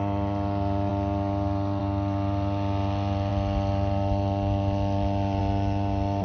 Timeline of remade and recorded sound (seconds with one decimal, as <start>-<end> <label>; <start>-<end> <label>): 0.0-6.2 recorded